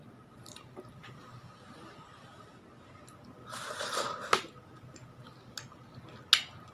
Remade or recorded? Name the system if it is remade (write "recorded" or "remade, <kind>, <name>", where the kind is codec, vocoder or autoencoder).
recorded